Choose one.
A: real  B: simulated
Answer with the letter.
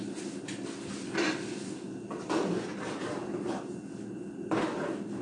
A